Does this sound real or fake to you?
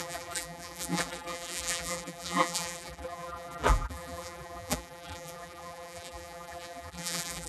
fake